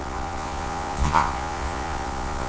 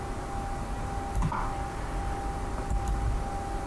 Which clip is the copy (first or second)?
first